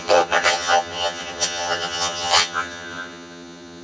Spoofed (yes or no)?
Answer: yes